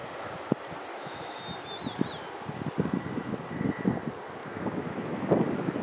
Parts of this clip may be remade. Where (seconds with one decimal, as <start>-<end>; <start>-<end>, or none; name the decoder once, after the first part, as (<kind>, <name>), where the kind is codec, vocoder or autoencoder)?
0.9-1.4 (autoencoder, DAC-VAE); 4.4-5.8